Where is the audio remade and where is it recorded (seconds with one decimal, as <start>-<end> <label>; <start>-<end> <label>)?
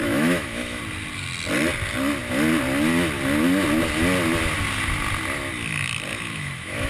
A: 0.0-0.8 remade; 0.8-6.1 recorded; 6.1-6.9 remade